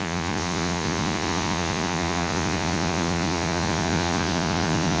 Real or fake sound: fake